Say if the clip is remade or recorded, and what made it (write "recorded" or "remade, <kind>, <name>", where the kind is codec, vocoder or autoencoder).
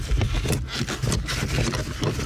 recorded